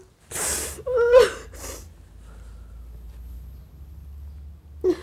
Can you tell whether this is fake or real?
real